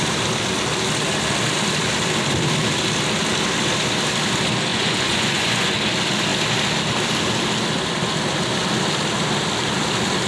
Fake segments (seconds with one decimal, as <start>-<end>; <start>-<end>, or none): 4.7-5.7